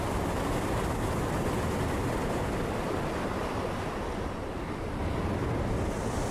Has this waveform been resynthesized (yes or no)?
no